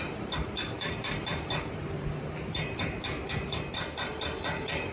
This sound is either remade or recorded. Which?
remade